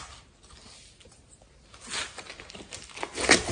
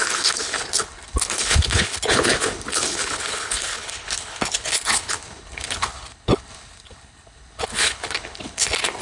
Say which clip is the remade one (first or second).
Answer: second